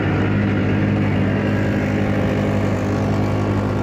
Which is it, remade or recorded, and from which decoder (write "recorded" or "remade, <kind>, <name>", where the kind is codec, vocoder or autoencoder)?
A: recorded